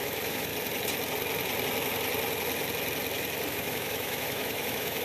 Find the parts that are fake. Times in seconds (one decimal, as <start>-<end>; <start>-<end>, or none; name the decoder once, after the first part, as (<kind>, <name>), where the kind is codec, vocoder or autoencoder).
0.0-0.5 (autoencoder, DAC-VAE); 3.5-5.0